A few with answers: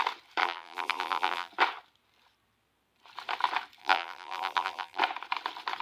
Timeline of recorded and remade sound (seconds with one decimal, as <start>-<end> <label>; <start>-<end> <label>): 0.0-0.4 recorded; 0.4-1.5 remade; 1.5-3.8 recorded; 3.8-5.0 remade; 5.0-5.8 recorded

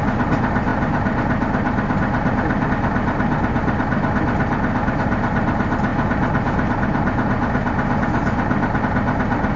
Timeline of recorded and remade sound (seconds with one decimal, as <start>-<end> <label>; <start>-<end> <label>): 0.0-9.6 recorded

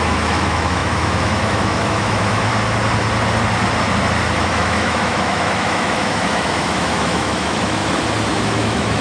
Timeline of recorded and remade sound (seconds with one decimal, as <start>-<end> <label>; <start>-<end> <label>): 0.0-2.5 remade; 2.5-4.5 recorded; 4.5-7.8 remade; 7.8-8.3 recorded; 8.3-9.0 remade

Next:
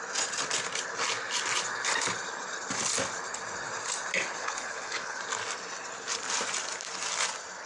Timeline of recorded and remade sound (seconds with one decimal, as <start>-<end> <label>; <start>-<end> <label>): 0.0-4.4 recorded; 4.4-5.2 remade; 5.2-7.7 recorded

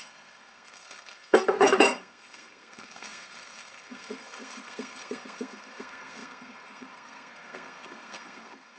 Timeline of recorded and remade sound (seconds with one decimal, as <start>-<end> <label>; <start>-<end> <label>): 0.0-8.8 remade

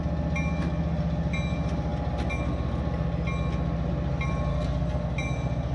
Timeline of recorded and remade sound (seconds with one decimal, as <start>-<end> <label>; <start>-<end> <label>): 0.0-4.5 recorded; 4.5-5.0 remade; 5.0-5.7 recorded

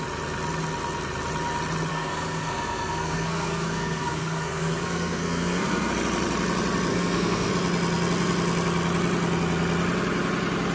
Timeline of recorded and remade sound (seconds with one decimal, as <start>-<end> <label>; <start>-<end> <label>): 0.0-1.9 recorded; 1.9-5.9 remade; 5.9-6.9 recorded; 6.9-7.5 remade; 7.5-10.7 recorded